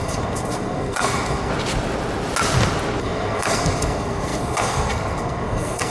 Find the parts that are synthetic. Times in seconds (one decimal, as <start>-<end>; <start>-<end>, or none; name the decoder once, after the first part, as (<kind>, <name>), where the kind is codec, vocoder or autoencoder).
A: 0.0-1.5 (codec, SNAC); 3.0-5.9

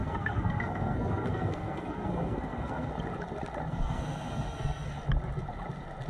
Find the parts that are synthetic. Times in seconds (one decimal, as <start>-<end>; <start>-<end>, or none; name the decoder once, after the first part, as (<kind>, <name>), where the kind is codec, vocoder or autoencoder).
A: 0.0-2.9 (codec, SNAC); 3.7-4.9

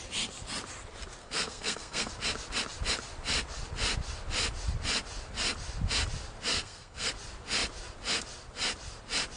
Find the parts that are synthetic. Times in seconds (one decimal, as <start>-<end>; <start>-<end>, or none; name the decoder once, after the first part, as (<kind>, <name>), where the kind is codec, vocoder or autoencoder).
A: 1.2-2.1 (codec, SNAC); 6.5-7.1

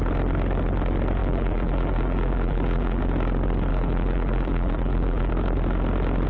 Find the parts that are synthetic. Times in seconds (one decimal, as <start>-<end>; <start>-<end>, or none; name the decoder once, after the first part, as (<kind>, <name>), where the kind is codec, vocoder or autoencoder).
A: 1.2-3.0 (vocoder, BigVGAN v2); 3.7-5.3

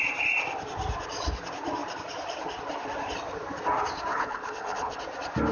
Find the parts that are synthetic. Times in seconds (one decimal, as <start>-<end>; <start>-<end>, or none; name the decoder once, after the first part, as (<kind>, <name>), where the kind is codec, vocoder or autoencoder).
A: 4.1-5.0 (codec, HILCodec)

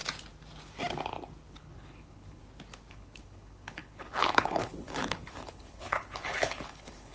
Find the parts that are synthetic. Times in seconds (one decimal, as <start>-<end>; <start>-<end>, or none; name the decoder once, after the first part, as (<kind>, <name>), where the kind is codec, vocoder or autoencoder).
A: 1.5-2.4 (codec, HILCodec); 2.9-7.1

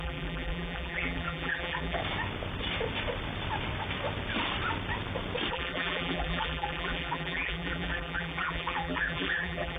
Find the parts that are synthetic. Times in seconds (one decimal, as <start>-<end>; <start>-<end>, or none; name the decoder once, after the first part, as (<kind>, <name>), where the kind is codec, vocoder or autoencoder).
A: 0.0-2.0 (vocoder, BigVGAN v2); 5.5-9.8